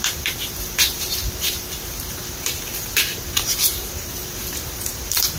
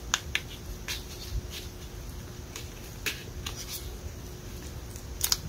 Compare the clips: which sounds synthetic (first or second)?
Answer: first